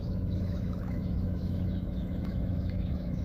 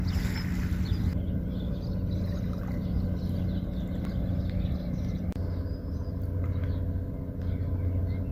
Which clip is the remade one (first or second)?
first